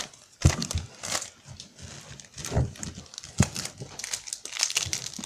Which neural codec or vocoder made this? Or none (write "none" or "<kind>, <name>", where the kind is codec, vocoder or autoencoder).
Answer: none